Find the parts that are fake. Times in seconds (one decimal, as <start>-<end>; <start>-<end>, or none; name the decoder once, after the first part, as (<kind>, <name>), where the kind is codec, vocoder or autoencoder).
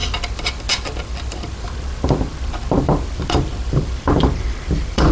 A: 3.1-5.1 (vocoder, BigVGAN v2)